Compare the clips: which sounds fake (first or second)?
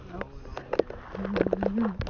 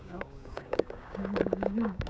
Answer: second